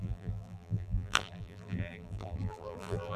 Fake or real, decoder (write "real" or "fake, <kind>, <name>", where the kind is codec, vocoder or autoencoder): fake, vocoder, BigVGAN v2